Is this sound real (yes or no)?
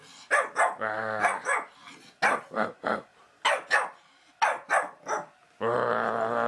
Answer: yes